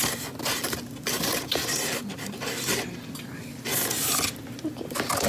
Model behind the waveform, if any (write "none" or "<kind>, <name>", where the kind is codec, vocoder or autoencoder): none